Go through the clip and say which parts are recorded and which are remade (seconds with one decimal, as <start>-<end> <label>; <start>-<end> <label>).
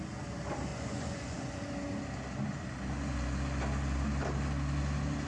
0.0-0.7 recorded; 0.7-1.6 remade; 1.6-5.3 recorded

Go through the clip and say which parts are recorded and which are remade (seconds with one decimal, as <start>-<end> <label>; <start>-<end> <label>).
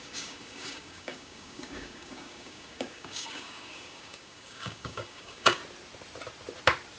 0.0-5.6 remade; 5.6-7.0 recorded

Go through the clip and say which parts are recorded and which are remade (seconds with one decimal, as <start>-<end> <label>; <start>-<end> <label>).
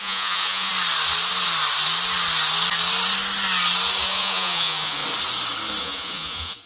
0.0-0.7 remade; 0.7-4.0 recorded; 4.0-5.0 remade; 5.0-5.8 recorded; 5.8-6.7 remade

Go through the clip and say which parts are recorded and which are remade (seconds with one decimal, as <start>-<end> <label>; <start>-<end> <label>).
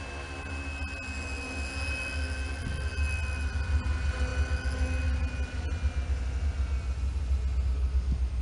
0.0-8.4 recorded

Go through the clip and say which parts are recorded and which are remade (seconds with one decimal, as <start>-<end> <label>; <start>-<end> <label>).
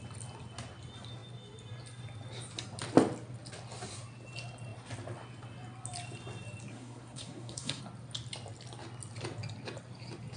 0.0-6.7 recorded; 6.7-7.8 remade; 7.8-10.4 recorded